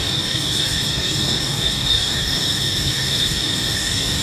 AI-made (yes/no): yes